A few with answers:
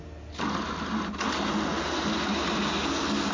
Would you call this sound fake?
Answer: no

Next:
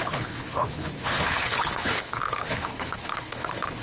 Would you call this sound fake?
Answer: yes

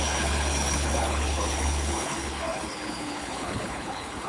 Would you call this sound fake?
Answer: yes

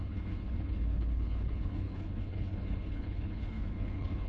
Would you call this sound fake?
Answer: yes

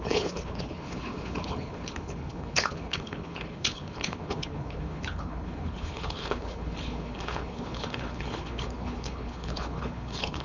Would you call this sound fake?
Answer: yes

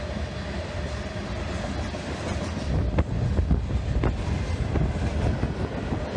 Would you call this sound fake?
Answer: no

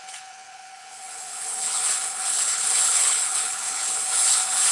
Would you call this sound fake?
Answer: yes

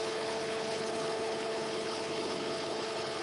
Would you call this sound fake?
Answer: yes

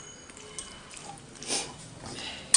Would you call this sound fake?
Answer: no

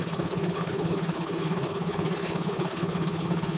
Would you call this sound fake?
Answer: yes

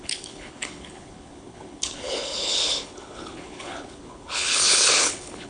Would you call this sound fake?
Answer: yes